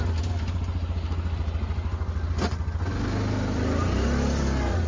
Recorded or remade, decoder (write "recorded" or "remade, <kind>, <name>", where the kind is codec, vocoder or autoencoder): recorded